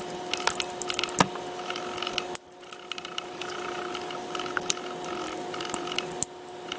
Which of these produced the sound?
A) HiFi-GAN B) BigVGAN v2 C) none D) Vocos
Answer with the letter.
C